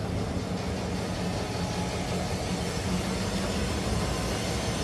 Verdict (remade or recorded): recorded